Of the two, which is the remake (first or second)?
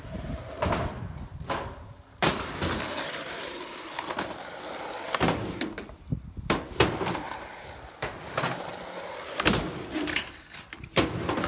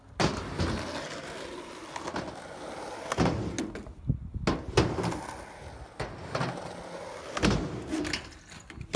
first